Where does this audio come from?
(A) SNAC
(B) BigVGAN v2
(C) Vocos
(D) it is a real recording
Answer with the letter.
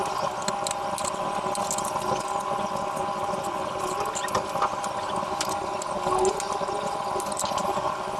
D